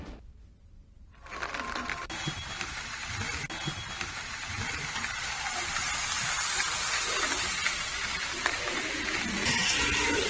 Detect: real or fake real